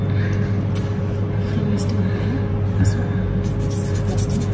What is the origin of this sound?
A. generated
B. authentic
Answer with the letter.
B